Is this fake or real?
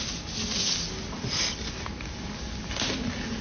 real